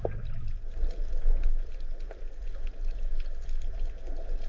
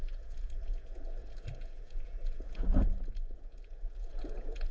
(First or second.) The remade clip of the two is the second